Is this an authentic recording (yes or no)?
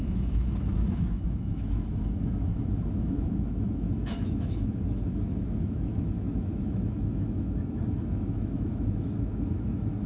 no